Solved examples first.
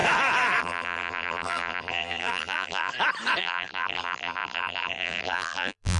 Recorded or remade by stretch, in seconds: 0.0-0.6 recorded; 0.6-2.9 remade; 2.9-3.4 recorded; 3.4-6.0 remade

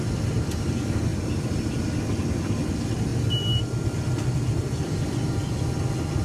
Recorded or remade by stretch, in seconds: 0.0-6.2 recorded

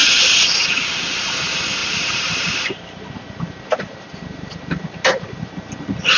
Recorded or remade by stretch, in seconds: 0.0-1.8 recorded; 1.8-5.5 remade; 5.5-6.2 recorded